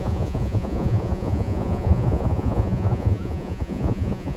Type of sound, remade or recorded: remade